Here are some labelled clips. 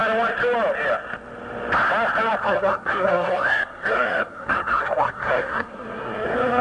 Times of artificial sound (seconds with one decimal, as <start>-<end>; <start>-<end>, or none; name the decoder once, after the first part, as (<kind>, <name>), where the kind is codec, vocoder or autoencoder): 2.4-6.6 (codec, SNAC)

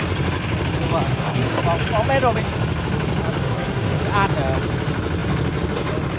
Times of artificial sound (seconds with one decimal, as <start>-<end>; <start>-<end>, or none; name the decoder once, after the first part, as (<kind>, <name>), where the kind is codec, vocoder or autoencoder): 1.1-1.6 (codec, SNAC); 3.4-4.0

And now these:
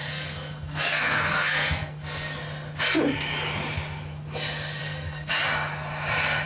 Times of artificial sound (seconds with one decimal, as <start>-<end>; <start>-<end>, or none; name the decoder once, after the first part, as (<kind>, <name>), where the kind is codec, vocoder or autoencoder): 0.0-2.4 (codec, SNAC); 4.8-5.3

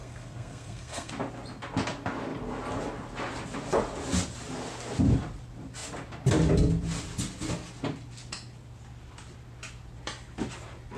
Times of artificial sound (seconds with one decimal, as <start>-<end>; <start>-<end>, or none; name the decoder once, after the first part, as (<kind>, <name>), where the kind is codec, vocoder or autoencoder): 0.0-1.1 (codec, SNAC)

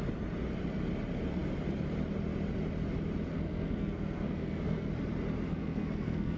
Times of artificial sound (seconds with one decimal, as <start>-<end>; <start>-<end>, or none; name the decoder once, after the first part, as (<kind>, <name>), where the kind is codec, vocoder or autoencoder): 3.3-4.9 (codec, SNAC); 5.5-6.4

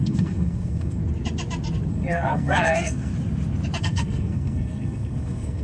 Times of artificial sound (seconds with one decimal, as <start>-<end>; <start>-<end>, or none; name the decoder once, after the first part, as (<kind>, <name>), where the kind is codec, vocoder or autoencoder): 0.0-1.0 (codec, SNAC); 1.9-3.1; 3.8-5.6

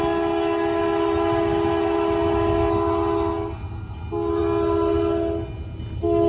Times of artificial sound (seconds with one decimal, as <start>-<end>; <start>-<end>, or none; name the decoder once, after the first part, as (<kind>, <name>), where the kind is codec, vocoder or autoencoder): none